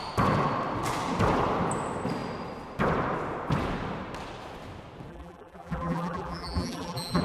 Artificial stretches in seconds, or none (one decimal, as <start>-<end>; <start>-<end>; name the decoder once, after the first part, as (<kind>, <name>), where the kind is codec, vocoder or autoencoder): 5.1-7.2 (vocoder, BigVGAN v2)

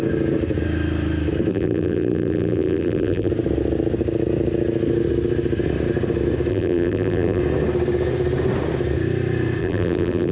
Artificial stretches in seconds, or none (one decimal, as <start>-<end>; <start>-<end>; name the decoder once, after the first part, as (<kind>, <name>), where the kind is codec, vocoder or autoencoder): 1.5-3.3 (vocoder, BigVGAN v2); 6.5-7.4; 9.6-10.3